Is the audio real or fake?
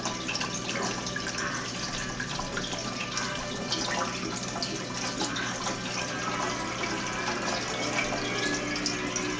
real